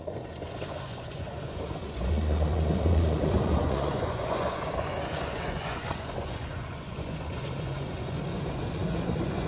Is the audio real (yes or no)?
no